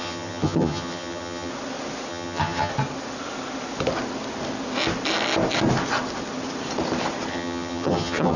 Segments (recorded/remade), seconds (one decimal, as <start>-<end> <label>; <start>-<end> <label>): 0.0-1.5 remade; 1.5-2.1 recorded; 2.1-2.7 remade; 2.7-7.3 recorded; 7.3-8.4 remade